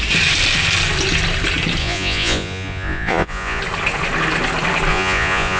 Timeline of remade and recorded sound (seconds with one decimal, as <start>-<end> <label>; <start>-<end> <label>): 0.0-1.8 recorded; 1.8-3.6 remade; 3.6-4.9 recorded; 4.9-5.6 remade

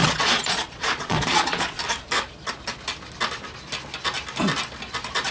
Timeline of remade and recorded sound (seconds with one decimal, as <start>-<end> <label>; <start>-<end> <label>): 0.0-1.8 remade; 1.8-5.3 recorded

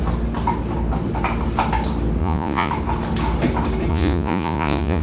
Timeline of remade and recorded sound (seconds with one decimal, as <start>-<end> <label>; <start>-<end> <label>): 0.0-2.2 recorded; 2.2-2.7 remade; 2.7-3.9 recorded; 3.9-5.0 remade

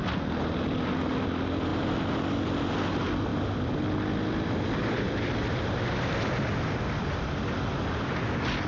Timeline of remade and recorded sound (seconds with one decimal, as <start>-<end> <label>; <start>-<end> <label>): 0.0-8.7 recorded

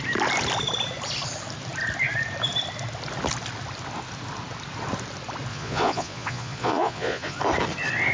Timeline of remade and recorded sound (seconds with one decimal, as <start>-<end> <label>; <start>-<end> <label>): 0.0-5.5 recorded; 5.5-7.4 remade; 7.4-8.1 recorded

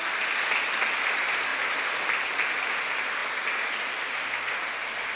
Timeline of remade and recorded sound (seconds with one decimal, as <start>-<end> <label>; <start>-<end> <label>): 0.0-5.2 recorded

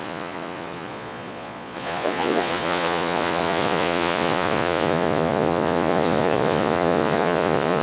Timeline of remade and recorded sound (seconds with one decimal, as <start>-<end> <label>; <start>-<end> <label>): 0.0-7.8 remade

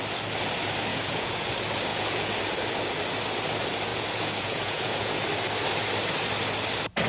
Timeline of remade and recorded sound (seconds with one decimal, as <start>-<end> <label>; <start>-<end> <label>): 0.0-0.9 recorded; 0.9-1.5 remade; 1.5-1.9 recorded; 1.9-2.4 remade; 2.4-3.9 recorded; 3.9-5.2 remade; 5.2-7.1 recorded